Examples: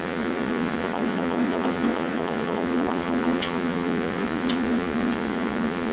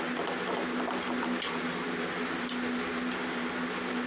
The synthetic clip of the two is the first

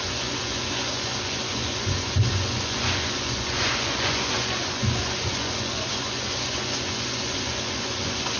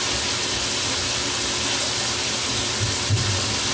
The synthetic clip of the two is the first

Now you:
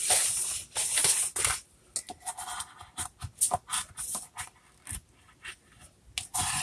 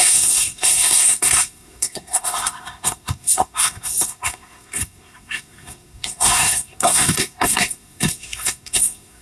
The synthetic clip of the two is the second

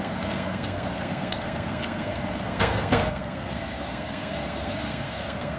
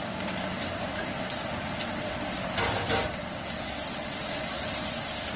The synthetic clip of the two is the first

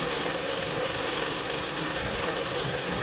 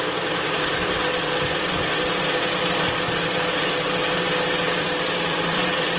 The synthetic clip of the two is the first